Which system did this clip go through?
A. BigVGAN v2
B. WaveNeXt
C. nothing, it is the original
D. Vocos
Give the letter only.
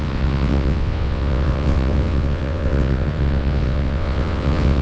B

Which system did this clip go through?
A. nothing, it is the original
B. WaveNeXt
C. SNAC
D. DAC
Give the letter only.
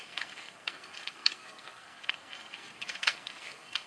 C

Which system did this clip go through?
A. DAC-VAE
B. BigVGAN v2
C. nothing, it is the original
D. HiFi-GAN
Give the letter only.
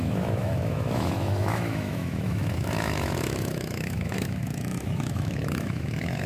A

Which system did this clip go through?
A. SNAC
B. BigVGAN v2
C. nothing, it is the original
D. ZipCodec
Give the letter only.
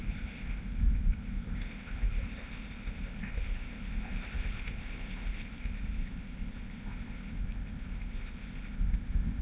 D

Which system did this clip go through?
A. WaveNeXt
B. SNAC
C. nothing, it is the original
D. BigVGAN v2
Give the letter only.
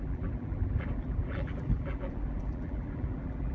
D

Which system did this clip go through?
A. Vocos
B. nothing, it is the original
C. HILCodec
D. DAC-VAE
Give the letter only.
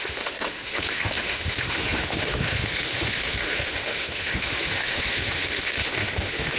D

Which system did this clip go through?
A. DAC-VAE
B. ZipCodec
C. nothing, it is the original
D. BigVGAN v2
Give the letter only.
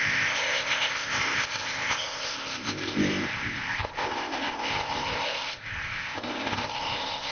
B